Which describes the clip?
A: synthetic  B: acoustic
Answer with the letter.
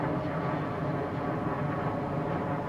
B